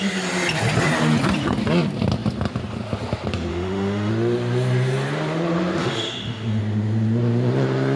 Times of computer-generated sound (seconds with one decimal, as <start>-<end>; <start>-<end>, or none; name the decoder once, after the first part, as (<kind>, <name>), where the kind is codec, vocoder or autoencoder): 3.5-4.1 (autoencoder, DAC-VAE); 5.8-6.6